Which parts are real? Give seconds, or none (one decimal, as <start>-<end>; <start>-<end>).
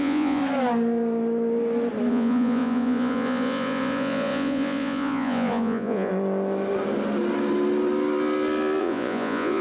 0.4-2.1; 6.1-8.8